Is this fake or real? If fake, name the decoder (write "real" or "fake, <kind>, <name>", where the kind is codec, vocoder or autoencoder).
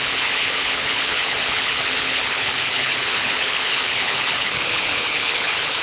fake, codec, HILCodec